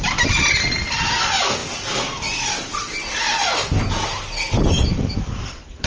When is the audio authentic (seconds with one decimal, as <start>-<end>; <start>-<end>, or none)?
0.0-5.9